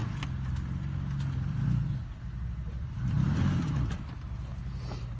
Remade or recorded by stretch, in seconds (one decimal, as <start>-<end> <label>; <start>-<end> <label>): 0.0-2.7 recorded; 2.7-4.5 remade; 4.5-5.2 recorded